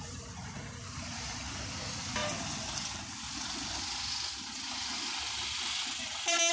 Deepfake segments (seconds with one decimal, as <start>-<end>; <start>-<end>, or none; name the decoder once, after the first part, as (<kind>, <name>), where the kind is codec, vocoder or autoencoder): none